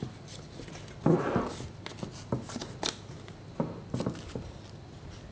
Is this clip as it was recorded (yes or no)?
yes